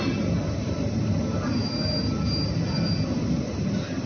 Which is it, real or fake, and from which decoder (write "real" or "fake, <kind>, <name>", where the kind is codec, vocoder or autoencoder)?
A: real